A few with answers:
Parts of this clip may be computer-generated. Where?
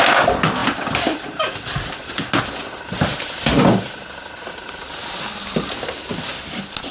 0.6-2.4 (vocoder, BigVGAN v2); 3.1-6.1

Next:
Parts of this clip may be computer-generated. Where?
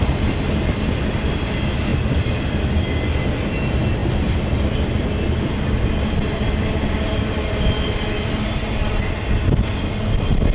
none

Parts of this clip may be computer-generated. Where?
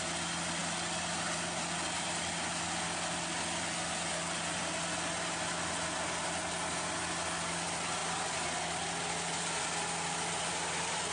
none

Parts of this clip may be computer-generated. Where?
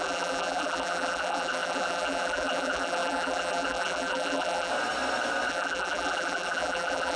0.0-4.7 (vocoder, BigVGAN v2); 5.5-7.2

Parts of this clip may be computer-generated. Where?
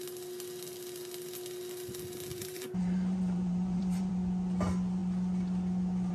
2.3-4.1 (vocoder, BigVGAN v2)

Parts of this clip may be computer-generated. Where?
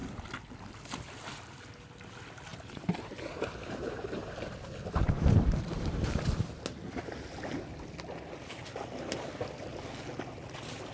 2.5-6.2 (vocoder, BigVGAN v2)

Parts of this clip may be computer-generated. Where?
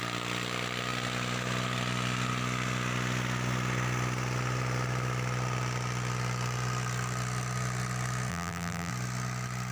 8.3-8.9 (vocoder, BigVGAN v2)